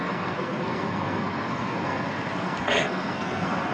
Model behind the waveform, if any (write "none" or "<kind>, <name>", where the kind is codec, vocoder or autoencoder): codec, SNAC